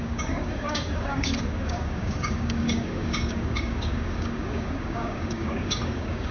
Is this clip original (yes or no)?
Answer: no